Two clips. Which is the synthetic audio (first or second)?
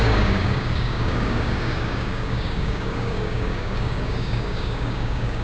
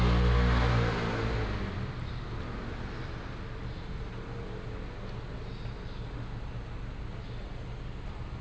first